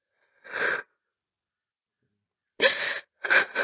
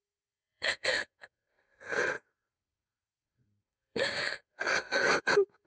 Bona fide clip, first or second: first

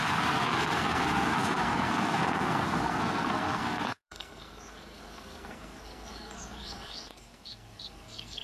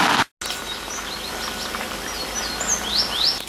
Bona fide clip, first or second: second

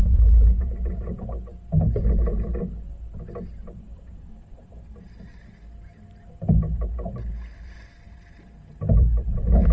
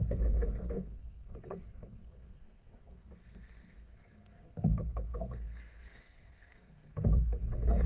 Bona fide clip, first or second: first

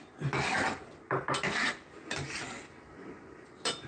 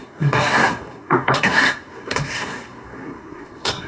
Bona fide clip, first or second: first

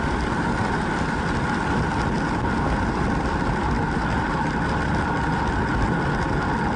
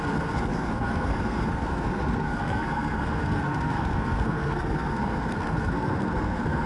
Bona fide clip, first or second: first